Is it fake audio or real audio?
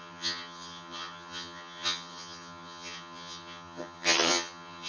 fake